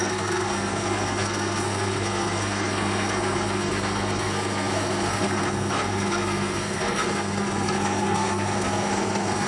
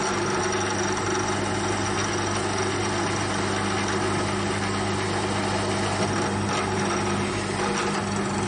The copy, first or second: first